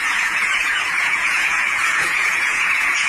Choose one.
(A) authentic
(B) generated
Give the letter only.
B